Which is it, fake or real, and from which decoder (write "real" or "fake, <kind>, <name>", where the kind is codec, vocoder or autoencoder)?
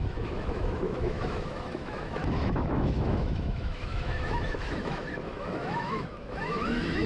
fake, autoencoder, DAC-VAE